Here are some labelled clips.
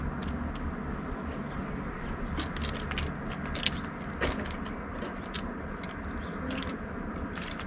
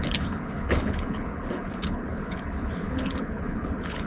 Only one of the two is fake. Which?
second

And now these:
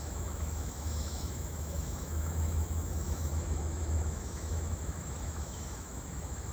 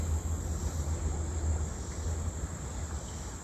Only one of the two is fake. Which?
first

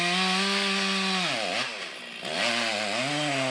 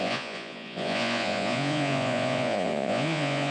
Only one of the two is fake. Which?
second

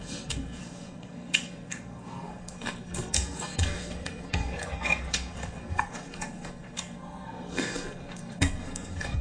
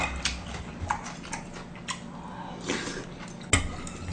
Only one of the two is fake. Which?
first